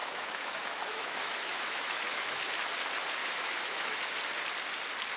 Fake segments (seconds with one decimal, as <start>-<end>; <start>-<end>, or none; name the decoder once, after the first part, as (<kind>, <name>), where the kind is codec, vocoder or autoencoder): 0.0-2.4 (autoencoder, DAC-VAE); 3.2-4.0